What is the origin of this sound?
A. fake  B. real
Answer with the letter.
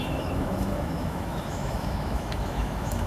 A